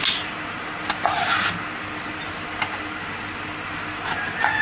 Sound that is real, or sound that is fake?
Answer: real